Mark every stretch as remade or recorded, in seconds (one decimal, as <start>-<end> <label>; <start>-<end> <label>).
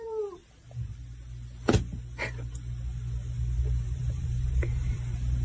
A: 0.0-0.4 remade; 0.4-3.6 recorded; 3.6-5.4 remade